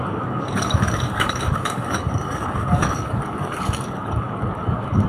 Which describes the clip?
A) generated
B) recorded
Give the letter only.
A